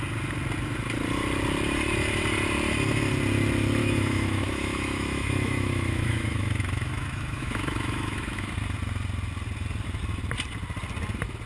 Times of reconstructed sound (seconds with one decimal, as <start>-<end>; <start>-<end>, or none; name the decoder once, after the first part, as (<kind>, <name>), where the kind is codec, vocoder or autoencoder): 3.8-8.5 (autoencoder, DAC-VAE)